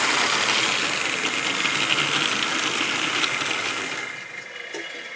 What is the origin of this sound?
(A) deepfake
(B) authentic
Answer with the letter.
B